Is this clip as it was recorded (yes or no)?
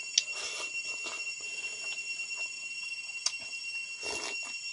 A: yes